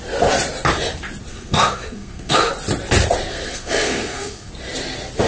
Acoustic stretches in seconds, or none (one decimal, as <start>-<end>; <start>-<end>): 0.0-1.3; 2.5-3.3; 4.5-5.3

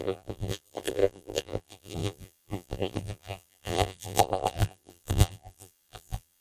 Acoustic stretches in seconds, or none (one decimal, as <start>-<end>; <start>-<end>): none